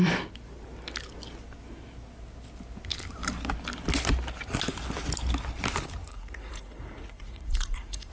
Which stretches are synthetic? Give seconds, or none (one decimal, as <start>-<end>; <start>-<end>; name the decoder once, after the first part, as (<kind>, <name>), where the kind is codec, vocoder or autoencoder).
6.1-8.1 (vocoder, Vocos)